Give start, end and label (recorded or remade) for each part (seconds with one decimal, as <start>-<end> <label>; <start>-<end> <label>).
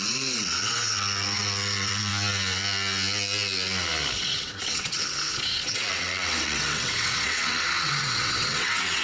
0.0-2.1 remade; 2.1-4.2 recorded; 4.2-9.0 remade